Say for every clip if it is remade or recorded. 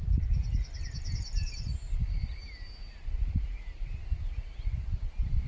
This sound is recorded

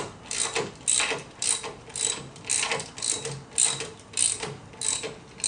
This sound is recorded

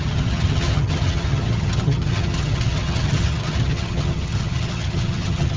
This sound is remade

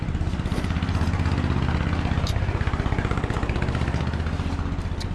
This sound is recorded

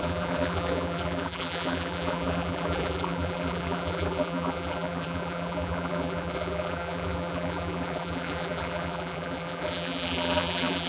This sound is remade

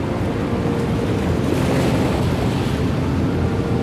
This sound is recorded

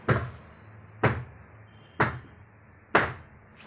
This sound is recorded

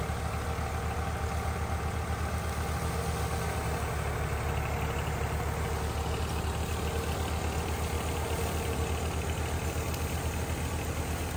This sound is recorded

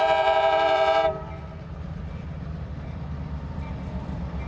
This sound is remade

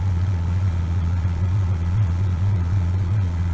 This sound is remade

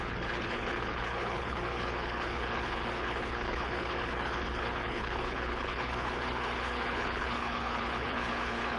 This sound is remade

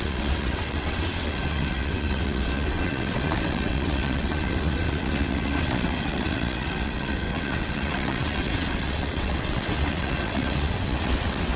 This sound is remade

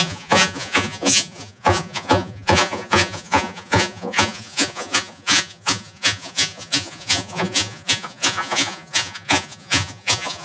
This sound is remade